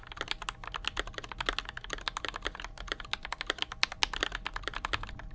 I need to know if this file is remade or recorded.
recorded